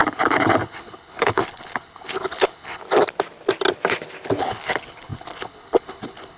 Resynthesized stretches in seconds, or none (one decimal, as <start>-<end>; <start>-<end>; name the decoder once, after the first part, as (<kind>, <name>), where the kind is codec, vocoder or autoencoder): 0.0-2.8 (codec, HILCodec); 4.4-6.4